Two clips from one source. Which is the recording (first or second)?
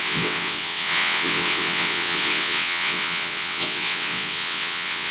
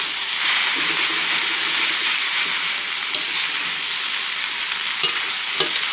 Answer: second